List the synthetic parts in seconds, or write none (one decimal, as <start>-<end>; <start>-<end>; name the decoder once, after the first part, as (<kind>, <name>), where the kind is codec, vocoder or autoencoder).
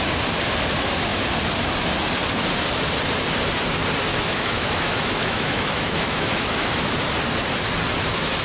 4.1-6.9 (autoencoder, DAC-VAE)